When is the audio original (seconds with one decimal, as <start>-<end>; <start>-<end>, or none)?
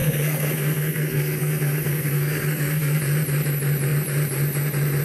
3.0-5.0